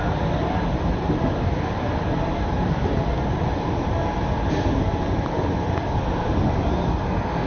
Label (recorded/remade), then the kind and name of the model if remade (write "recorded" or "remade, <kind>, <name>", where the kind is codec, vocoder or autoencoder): recorded